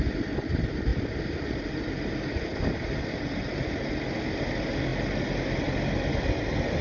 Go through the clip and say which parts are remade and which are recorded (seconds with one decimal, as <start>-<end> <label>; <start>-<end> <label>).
0.0-0.9 recorded; 0.9-1.8 remade; 1.8-2.5 recorded; 2.5-3.9 remade; 3.9-6.8 recorded